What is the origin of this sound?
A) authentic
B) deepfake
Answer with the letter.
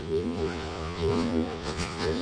B